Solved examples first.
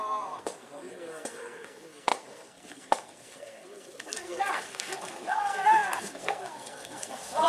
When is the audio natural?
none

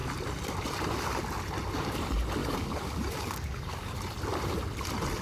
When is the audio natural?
0.0-2.4; 3.9-5.2

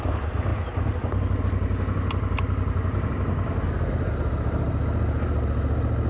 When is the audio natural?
0.0-0.5; 1.4-6.1

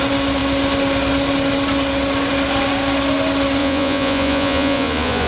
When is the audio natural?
0.0-3.6

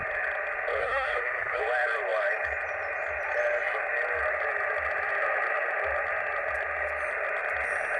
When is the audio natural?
0.0-0.8; 1.6-8.0

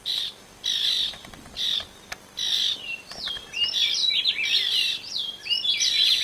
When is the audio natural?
4.0-5.1